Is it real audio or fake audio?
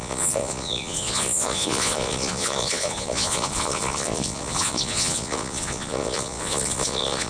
fake